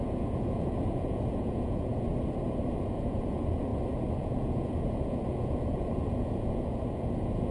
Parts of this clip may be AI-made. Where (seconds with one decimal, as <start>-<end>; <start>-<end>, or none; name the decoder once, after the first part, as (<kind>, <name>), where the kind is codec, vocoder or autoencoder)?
0.0-2.1 (vocoder, Vocos); 2.8-3.7; 4.2-7.5